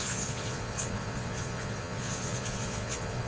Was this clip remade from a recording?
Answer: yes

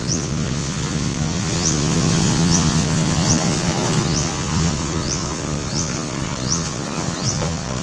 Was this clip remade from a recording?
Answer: yes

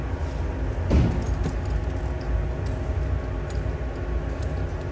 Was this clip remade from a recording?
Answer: no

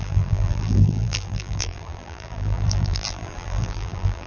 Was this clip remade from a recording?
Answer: yes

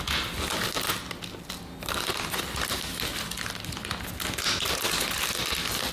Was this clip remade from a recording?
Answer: no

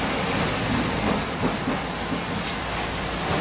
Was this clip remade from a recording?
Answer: no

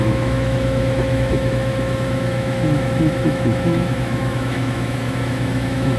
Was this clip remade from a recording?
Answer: yes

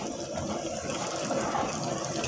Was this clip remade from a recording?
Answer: no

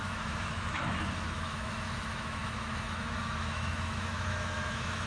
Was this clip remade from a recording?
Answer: yes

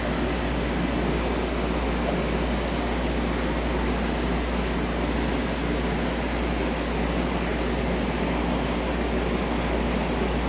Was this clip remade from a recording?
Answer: no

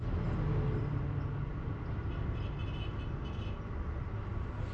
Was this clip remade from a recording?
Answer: no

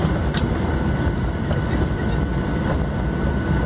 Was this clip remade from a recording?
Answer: no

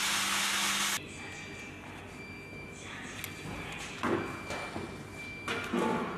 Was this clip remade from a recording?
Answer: no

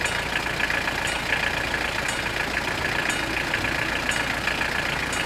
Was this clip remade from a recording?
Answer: no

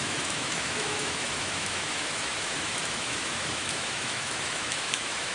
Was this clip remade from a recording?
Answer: yes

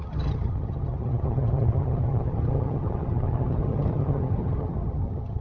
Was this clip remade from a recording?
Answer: yes